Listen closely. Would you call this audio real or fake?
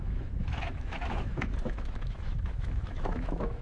fake